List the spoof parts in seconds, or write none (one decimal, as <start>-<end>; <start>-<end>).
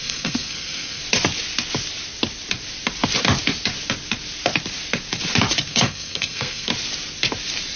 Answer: 0.0-1.0; 5.7-6.7